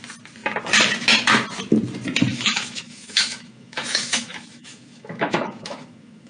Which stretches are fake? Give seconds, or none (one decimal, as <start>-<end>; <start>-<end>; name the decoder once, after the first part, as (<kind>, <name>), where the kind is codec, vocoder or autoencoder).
2.3-6.3 (autoencoder, DAC-VAE)